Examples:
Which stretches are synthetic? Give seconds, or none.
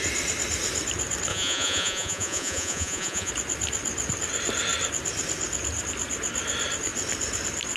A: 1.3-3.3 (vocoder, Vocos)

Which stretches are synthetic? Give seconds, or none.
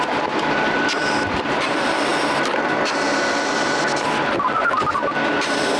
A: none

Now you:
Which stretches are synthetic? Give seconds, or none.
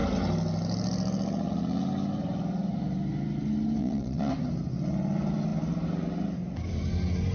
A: 3.8-4.3 (vocoder, Vocos)